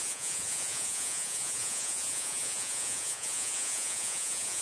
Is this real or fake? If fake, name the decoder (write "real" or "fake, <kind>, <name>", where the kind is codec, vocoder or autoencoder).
fake, vocoder, Vocos